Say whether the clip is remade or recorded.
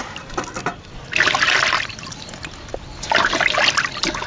recorded